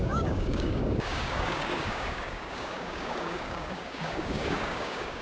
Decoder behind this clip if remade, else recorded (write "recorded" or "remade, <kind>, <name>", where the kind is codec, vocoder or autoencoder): remade, codec, DAC